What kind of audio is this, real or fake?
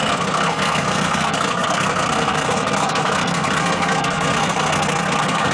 fake